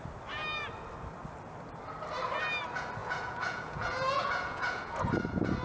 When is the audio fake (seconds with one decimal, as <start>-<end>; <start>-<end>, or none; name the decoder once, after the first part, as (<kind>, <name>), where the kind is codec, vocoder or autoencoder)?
3.0-5.1 (vocoder, Vocos)